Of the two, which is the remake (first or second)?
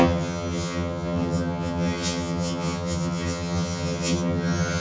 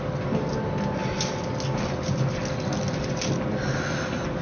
first